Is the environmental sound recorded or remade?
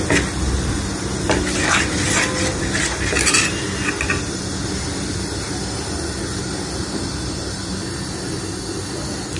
recorded